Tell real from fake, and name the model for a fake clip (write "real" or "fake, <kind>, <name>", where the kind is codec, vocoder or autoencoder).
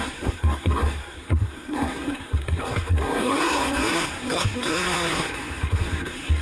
fake, codec, SNAC